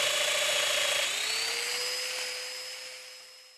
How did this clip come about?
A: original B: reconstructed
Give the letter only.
A